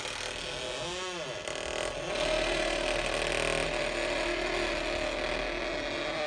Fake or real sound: real